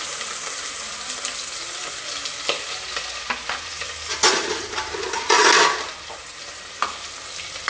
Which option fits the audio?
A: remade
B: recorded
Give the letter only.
B